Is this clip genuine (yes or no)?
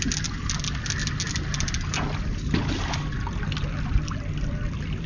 yes